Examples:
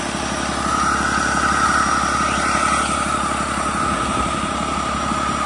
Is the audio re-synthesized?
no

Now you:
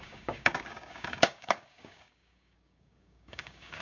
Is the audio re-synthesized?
yes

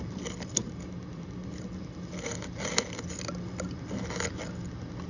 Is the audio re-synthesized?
no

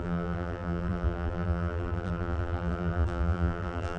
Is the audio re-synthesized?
yes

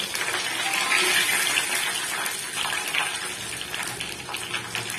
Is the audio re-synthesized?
no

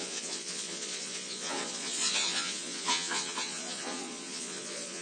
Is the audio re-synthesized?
yes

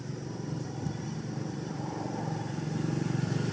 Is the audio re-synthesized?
yes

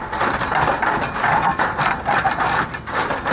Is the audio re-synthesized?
no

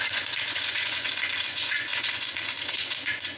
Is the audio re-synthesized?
yes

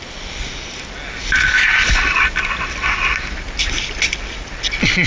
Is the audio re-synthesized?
no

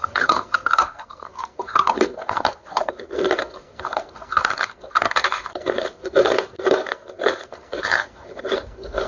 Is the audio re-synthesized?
yes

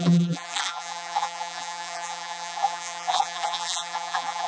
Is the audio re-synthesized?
yes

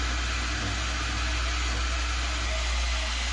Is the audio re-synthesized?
no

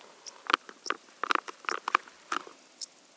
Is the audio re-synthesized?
no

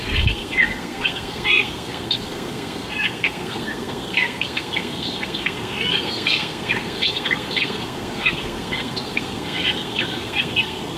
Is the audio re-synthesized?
yes